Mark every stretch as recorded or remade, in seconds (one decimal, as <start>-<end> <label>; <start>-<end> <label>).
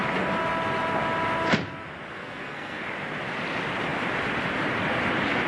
0.0-2.1 recorded; 2.1-2.8 remade; 2.8-5.5 recorded